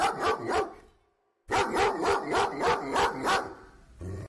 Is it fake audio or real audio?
real